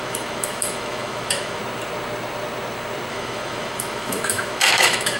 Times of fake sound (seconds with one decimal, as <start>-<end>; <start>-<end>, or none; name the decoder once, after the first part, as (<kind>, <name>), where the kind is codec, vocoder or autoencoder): 0.0-1.6 (autoencoder, DAC-VAE); 3.1-5.2